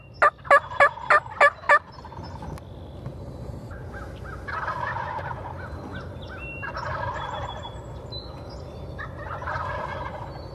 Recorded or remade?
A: recorded